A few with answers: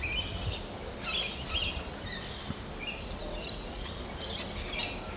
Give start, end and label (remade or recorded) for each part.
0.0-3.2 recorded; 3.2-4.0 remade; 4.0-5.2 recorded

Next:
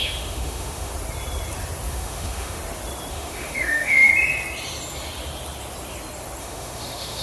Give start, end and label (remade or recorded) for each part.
0.0-0.9 remade; 0.9-1.9 recorded; 1.9-2.6 remade; 2.6-3.1 recorded; 3.1-4.1 remade; 4.1-6.4 recorded; 6.4-7.2 remade

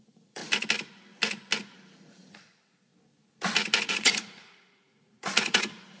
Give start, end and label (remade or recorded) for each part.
0.0-0.4 remade; 0.4-1.6 recorded; 1.6-2.9 remade; 2.9-3.9 recorded; 3.9-6.0 remade

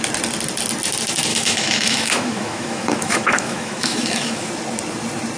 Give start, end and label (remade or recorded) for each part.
0.0-1.3 recorded; 1.3-4.5 remade; 4.5-5.4 recorded